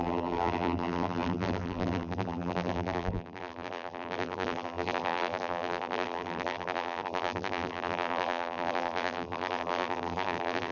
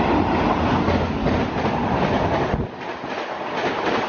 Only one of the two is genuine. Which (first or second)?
second